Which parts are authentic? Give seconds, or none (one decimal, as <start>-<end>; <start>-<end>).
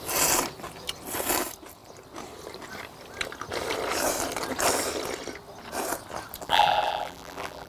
0.0-6.4